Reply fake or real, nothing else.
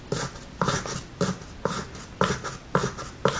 real